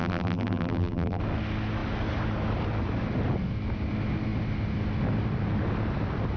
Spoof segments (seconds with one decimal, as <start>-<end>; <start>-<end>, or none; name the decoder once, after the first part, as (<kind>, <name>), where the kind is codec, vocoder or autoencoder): 0.0-1.2 (vocoder, BigVGAN v2)